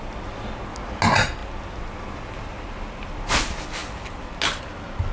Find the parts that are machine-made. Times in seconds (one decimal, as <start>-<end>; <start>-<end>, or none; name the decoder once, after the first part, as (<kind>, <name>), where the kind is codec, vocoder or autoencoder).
none